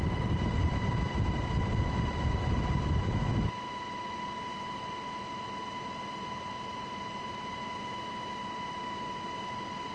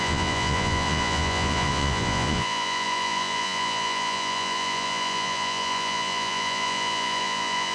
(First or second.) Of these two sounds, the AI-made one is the second